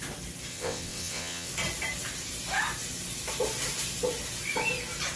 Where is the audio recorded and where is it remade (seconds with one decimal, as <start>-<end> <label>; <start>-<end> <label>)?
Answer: 0.0-0.5 recorded; 0.5-1.5 remade; 1.5-5.2 recorded